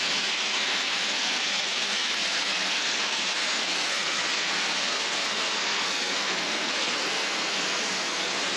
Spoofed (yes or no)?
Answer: yes